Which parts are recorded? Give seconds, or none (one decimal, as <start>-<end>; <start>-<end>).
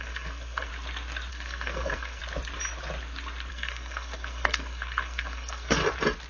0.7-1.3; 2.2-3.5; 5.8-6.3